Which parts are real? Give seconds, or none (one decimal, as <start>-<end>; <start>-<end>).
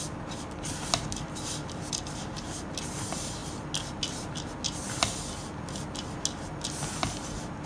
0.0-7.7